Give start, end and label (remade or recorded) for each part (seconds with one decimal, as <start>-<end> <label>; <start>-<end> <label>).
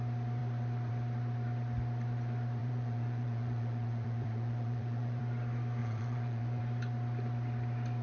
0.0-2.6 recorded; 2.6-5.2 remade; 5.2-5.8 recorded; 5.8-6.6 remade; 6.6-8.0 recorded